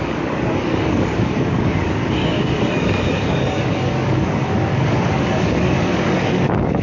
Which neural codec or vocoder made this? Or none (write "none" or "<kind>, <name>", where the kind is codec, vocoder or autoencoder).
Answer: codec, DAC